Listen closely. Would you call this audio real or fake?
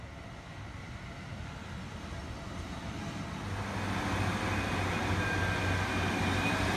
real